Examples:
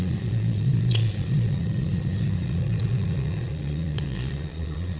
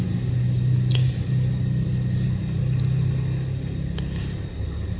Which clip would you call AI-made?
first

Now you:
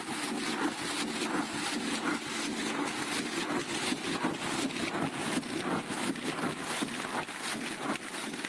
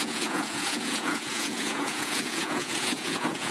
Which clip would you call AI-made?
second